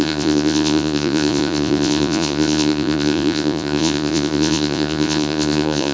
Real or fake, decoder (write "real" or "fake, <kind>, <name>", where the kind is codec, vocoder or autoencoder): fake, vocoder, Vocos